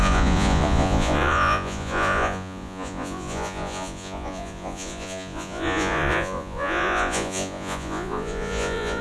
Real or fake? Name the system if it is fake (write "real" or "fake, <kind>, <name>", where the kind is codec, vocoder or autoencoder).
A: fake, vocoder, Vocos